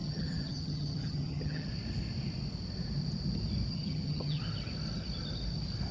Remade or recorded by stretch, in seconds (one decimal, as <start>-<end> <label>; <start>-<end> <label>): 0.0-1.7 remade; 1.7-3.7 recorded; 3.7-4.4 remade; 4.4-5.9 recorded